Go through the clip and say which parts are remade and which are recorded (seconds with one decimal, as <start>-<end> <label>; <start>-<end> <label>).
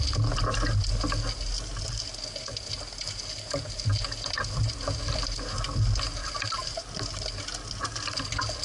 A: 0.0-6.2 recorded; 6.2-6.9 remade; 6.9-8.6 recorded